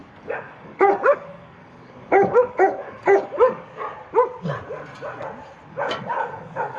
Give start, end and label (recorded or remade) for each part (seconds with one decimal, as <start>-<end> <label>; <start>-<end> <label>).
0.0-3.9 remade; 3.9-5.7 recorded; 5.7-6.8 remade